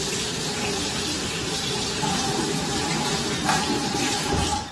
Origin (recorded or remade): remade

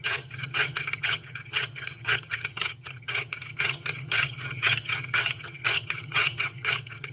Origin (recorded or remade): remade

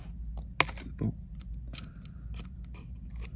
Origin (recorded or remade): recorded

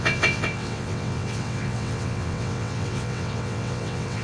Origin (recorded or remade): remade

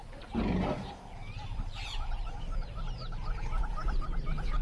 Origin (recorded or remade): remade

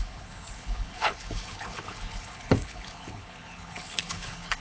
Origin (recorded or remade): remade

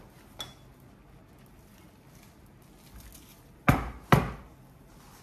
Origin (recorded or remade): recorded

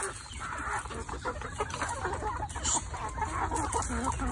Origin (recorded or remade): recorded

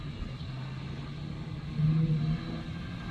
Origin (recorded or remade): recorded